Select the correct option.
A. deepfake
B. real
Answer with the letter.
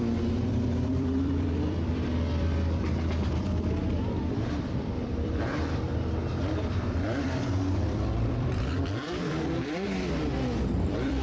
A